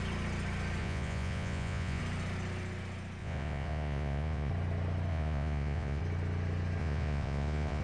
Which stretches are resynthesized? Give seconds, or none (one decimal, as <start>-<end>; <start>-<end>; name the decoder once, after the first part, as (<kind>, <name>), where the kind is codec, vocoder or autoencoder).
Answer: 0.8-2.0 (vocoder, Vocos); 3.2-4.5; 5.1-6.0; 6.8-7.8